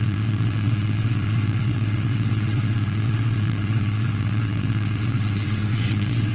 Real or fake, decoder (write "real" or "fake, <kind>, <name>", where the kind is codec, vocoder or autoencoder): fake, vocoder, WaveNeXt